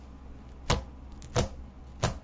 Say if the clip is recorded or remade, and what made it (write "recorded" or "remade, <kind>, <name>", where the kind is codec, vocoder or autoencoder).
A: recorded